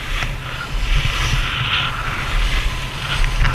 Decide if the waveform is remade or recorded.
recorded